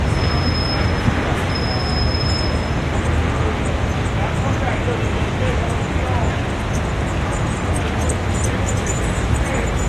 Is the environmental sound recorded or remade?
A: recorded